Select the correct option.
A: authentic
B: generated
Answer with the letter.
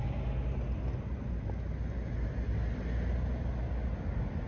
A